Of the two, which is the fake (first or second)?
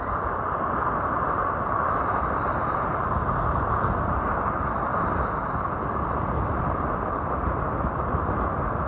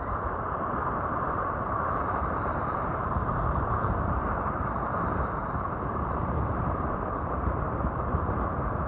second